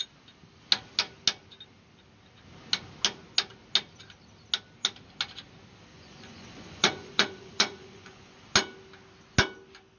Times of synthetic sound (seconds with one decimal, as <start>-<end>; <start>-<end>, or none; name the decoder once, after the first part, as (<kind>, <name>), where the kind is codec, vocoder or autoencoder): 5.9-8.4 (vocoder, Vocos)